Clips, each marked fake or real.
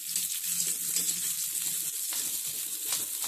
real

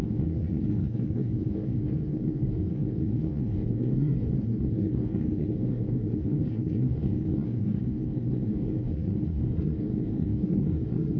fake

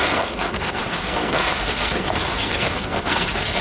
fake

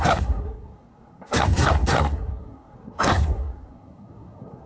fake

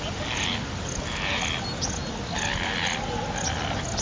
real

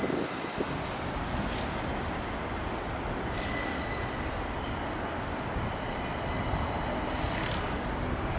real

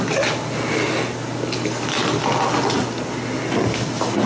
real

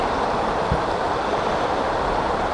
real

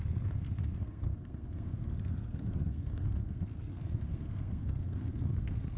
fake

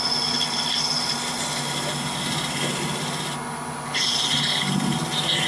real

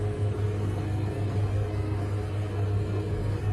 fake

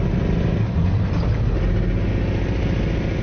real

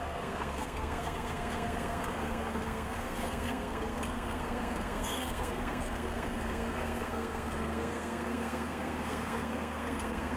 fake